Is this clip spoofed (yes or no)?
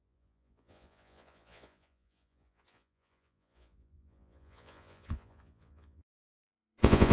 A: yes